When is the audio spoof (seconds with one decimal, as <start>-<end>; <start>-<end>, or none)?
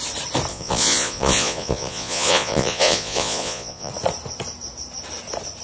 0.5-3.9